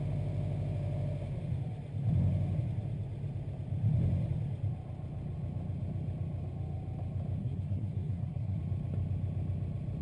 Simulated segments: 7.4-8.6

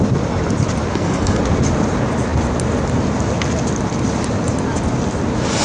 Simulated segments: 0.9-1.4